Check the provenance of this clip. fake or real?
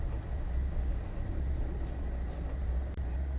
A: real